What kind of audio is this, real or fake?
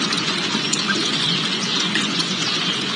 fake